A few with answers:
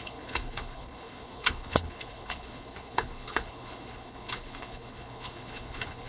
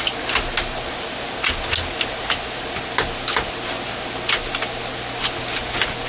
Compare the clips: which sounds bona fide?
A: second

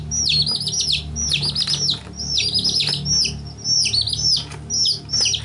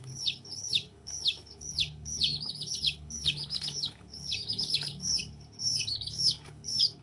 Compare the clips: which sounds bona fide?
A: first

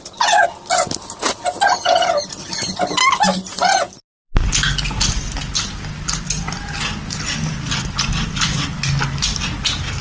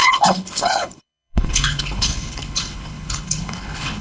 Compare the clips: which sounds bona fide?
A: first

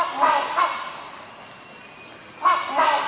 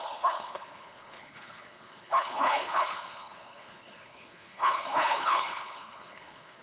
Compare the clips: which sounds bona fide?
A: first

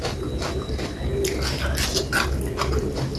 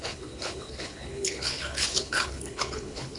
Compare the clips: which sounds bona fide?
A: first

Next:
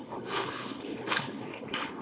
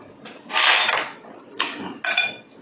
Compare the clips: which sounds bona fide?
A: second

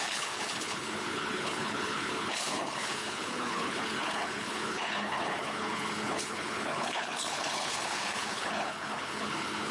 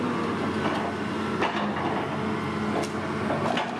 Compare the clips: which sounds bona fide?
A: second